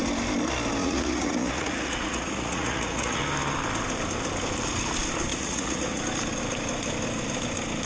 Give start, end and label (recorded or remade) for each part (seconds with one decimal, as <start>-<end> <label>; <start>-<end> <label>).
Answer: 0.0-0.8 recorded; 0.8-3.2 remade; 3.2-5.3 recorded; 5.3-6.0 remade; 6.0-7.9 recorded